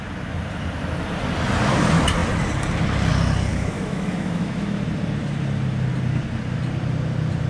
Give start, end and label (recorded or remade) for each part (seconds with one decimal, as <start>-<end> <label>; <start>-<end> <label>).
0.0-3.5 recorded; 3.5-4.8 remade; 4.8-7.5 recorded